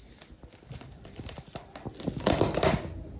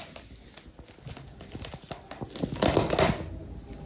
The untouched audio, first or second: second